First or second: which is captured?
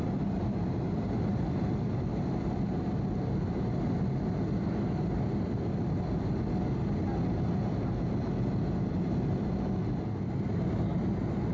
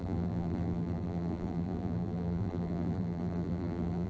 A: first